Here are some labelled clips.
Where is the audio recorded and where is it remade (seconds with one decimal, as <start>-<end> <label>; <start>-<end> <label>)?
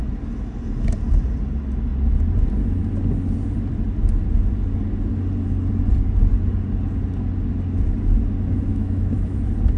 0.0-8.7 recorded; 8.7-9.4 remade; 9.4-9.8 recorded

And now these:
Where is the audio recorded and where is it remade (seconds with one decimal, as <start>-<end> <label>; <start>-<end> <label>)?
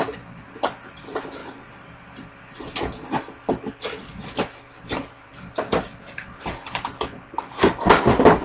0.0-8.4 recorded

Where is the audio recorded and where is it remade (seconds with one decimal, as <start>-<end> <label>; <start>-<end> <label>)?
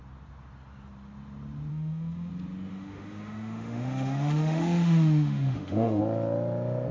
0.0-1.7 recorded; 1.7-2.3 remade; 2.3-2.7 recorded; 2.7-6.0 remade; 6.0-6.9 recorded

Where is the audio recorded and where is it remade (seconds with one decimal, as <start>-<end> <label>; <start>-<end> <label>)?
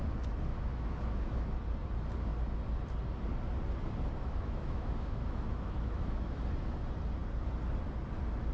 0.0-0.5 recorded; 0.5-1.5 remade; 1.5-4.2 recorded; 4.2-6.4 remade; 6.4-8.5 recorded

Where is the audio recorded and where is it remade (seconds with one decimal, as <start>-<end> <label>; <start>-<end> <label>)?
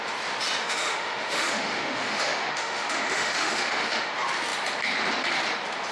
0.0-0.6 recorded; 0.6-4.1 remade; 4.1-5.9 recorded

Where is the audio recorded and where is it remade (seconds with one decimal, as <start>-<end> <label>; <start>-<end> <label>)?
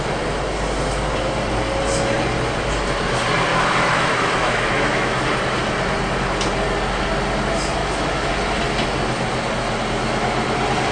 0.0-3.5 recorded; 3.5-5.2 remade; 5.2-7.8 recorded; 7.8-8.3 remade; 8.3-10.9 recorded